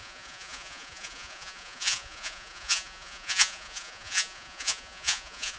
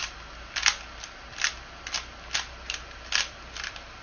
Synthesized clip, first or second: first